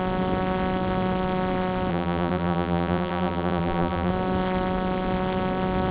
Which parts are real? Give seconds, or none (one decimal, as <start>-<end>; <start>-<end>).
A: 0.0-1.9; 4.1-5.9